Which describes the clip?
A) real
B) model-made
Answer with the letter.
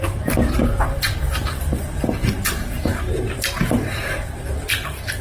B